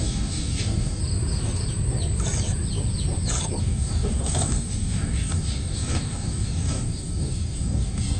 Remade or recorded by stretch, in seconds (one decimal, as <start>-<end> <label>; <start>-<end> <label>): 0.0-1.0 remade; 1.0-3.6 recorded; 3.6-8.2 remade